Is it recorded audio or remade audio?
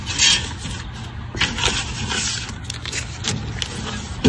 recorded